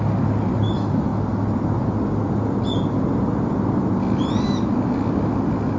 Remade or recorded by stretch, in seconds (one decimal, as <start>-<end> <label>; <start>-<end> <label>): 0.0-5.8 recorded